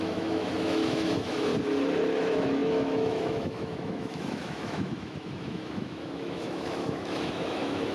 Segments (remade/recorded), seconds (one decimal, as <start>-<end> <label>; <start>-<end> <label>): 0.0-1.5 remade; 1.5-2.2 recorded; 2.2-7.9 remade